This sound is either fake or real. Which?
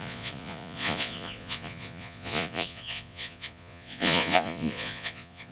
fake